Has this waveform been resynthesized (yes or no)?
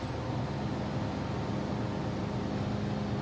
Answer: no